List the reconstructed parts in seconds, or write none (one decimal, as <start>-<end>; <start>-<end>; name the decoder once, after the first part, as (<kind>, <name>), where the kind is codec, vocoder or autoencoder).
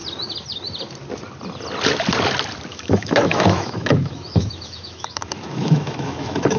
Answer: 2.7-6.6 (autoencoder, DAC-VAE)